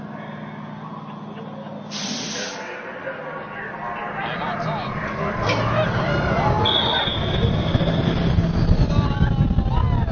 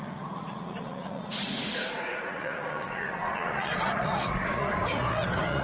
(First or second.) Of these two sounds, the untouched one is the first